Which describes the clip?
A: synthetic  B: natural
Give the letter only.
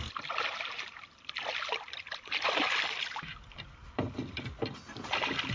B